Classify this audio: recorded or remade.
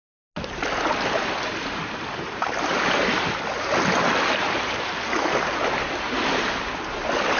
recorded